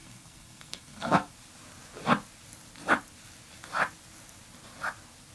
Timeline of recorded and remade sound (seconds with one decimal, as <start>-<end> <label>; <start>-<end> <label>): 0.0-1.3 remade; 1.3-5.3 recorded